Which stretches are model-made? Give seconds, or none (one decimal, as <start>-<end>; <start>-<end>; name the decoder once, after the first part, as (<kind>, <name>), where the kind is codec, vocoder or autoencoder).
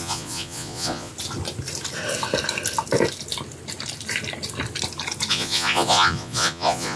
0.0-1.1 (vocoder, Vocos); 5.3-7.0